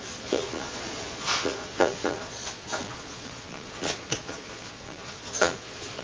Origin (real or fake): fake